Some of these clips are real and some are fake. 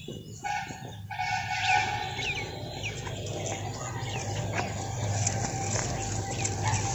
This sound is real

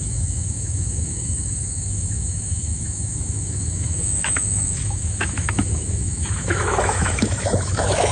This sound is fake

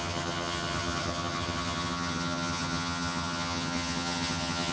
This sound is fake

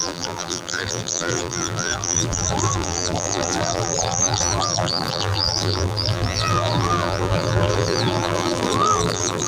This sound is fake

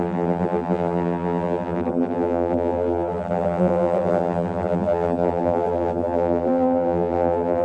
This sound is fake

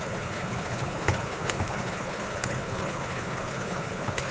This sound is fake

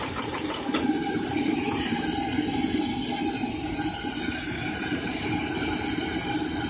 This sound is real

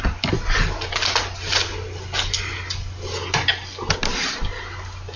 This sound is real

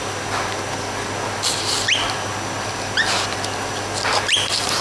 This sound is real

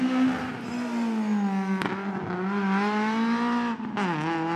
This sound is real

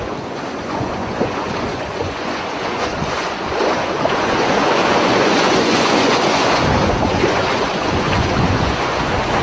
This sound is fake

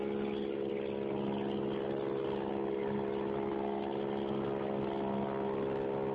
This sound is real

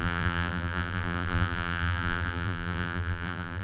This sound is fake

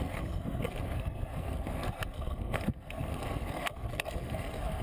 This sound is fake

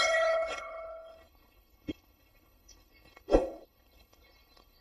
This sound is fake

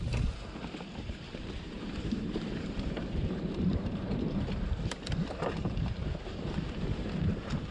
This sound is fake